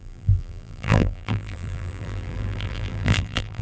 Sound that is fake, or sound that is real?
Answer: fake